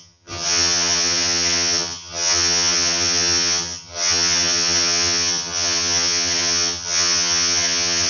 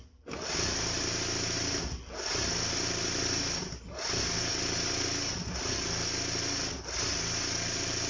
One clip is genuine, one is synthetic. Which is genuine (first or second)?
second